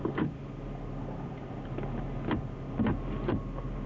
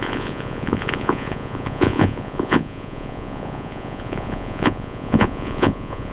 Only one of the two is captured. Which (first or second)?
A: first